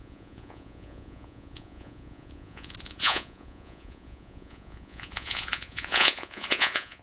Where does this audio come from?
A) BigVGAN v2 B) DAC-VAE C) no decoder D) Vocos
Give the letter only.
D